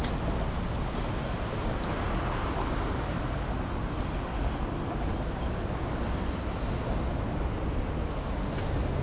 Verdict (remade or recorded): recorded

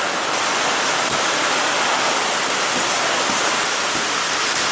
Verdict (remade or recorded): recorded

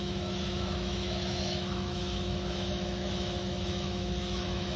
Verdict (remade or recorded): remade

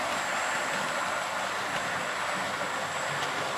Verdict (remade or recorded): recorded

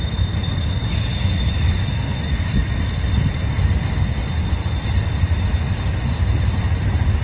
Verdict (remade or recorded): recorded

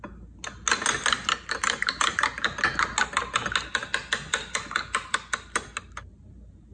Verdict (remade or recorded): recorded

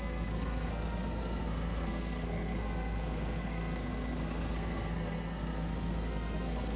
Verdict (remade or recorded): remade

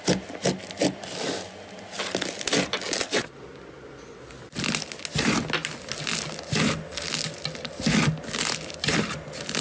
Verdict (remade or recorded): recorded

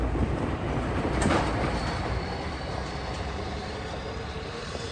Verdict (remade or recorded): remade